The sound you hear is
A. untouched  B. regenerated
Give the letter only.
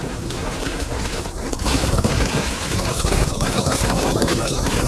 B